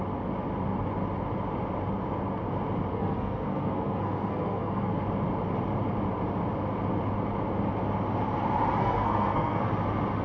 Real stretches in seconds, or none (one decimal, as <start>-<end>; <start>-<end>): 0.0-2.9; 4.9-8.8; 9.7-10.2